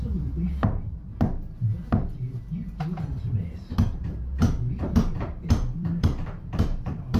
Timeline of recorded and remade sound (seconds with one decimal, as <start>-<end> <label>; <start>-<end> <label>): 0.0-1.1 remade; 1.1-2.8 recorded; 2.8-7.2 remade

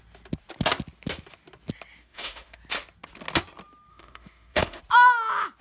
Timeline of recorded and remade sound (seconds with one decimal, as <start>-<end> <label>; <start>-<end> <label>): 0.0-2.0 recorded; 2.0-2.6 remade; 2.6-3.9 recorded; 3.9-4.8 remade; 4.8-5.6 recorded

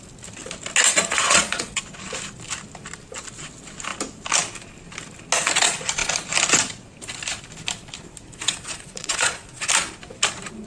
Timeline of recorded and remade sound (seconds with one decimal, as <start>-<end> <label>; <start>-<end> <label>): 0.0-1.2 recorded; 1.2-1.8 remade; 1.8-8.3 recorded; 8.3-9.7 remade; 9.7-10.7 recorded

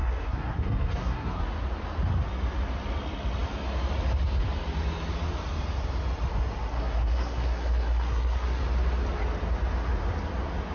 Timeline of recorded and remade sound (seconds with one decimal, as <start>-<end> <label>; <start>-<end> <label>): 0.0-1.4 remade; 1.4-6.7 recorded; 6.7-8.6 remade; 8.6-10.7 recorded

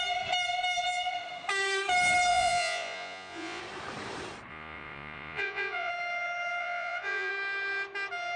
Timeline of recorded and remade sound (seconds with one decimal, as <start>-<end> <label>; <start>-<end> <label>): 0.0-2.3 recorded; 2.3-3.6 remade; 3.6-4.5 recorded; 4.5-5.9 remade; 5.9-6.6 recorded; 6.6-7.3 remade; 7.3-8.4 recorded

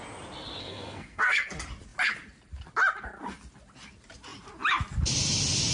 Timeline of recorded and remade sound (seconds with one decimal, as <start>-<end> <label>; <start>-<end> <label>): 0.0-0.6 recorded; 0.6-1.5 remade; 1.5-5.7 recorded